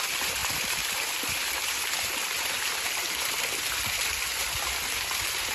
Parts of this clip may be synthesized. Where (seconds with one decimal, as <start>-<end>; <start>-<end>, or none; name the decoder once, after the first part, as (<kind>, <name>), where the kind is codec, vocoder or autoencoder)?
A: 0.4-3.4 (vocoder, BigVGAN v2); 4.4-5.5

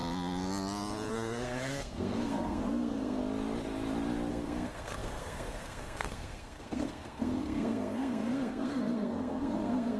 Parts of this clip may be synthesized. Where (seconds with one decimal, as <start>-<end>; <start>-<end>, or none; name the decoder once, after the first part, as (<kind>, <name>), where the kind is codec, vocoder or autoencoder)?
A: 1.1-3.2 (codec, SNAC); 4.3-10.0

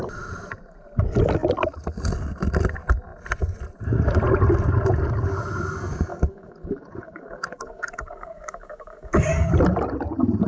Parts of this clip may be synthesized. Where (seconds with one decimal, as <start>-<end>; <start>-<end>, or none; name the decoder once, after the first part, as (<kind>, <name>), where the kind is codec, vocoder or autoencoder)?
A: 6.1-9.5 (codec, DAC)